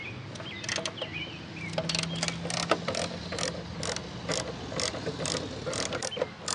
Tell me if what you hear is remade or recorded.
recorded